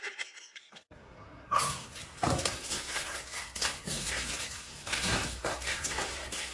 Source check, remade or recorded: remade